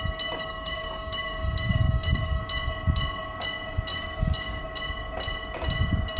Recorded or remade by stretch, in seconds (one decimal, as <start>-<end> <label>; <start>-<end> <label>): 0.0-0.4 recorded; 0.4-2.4 remade; 2.4-3.9 recorded; 3.9-4.6 remade; 4.6-6.2 recorded